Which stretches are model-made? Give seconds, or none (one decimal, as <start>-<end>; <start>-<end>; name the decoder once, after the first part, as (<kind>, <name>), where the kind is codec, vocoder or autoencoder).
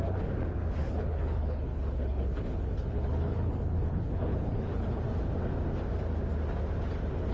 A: 0.8-5.0 (codec, HILCodec)